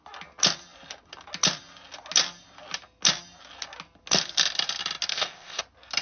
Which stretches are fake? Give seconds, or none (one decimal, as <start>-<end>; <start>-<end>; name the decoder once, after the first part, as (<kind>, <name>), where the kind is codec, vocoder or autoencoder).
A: 5.1-5.6 (codec, ZipCodec)